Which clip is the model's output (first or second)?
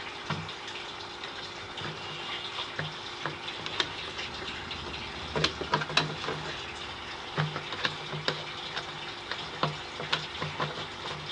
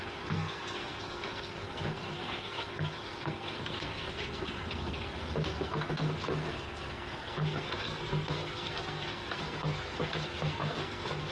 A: second